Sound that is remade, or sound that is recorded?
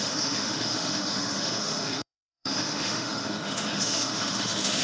remade